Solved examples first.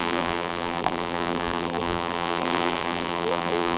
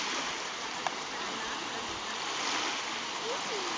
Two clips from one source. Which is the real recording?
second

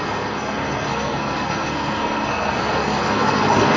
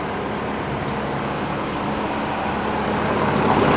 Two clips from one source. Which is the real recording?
second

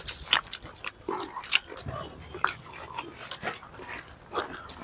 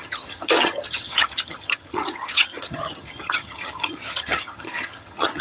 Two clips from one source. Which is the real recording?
first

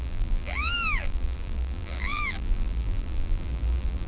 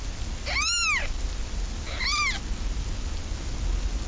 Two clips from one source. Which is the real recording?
second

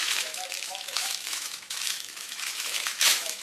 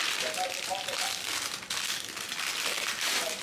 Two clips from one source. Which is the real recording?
second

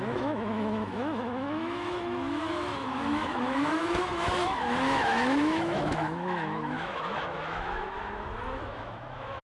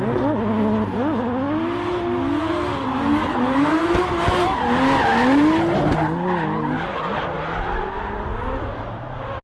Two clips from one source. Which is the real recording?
second